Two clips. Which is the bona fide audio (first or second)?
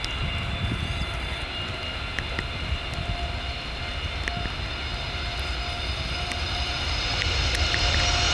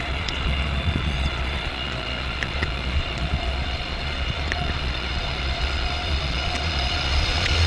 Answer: first